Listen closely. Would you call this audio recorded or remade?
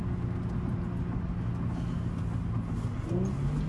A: recorded